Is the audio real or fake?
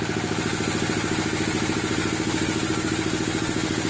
real